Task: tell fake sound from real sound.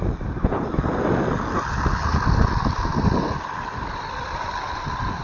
real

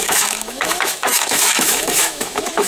fake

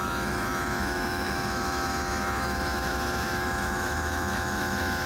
fake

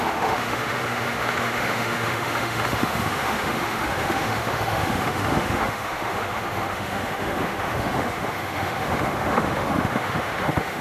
fake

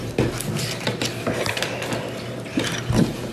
real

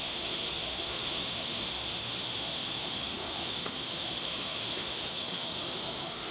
fake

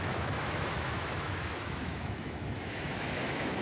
fake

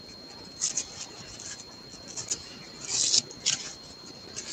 real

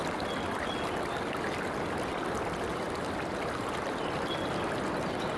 real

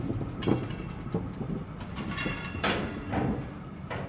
real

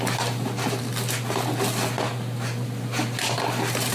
real